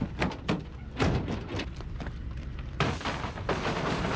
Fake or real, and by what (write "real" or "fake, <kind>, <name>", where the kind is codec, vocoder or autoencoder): real